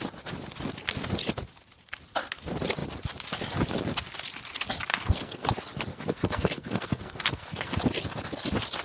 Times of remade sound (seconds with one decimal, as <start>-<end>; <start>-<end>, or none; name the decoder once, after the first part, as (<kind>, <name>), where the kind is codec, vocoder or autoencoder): 4.9-5.5 (codec, SNAC); 5.9-7.8